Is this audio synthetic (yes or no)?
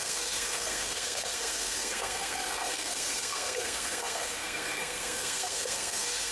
yes